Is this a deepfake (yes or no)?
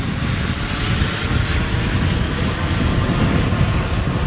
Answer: no